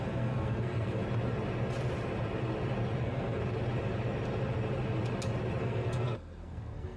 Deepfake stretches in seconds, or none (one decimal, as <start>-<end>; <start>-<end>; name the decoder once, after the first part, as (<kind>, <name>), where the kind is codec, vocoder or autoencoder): 0.0-1.0 (codec, SNAC); 3.0-3.4; 5.6-7.0